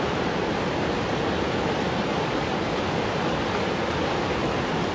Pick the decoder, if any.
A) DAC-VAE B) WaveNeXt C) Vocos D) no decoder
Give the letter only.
D